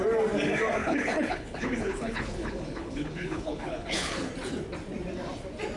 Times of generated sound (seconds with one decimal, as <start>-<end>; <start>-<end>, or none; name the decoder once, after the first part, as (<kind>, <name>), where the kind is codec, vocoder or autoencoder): 0.8-4.3 (codec, HILCodec)